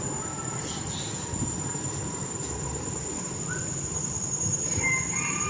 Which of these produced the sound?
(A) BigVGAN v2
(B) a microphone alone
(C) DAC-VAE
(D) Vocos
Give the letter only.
A